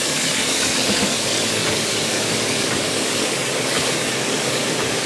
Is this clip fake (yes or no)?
yes